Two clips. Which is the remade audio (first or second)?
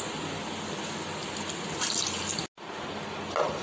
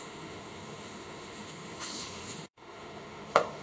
second